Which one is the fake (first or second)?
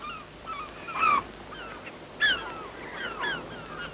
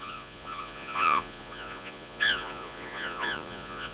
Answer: second